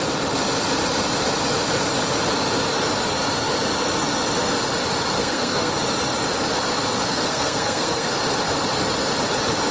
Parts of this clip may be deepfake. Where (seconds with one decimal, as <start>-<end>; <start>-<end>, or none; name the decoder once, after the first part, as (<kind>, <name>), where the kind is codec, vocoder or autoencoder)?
5.2-5.7 (codec, SNAC); 7.1-8.1